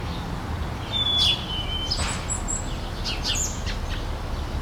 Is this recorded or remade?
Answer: recorded